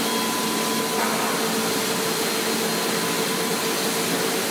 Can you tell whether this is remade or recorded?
recorded